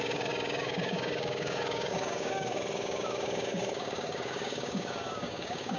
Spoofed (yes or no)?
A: yes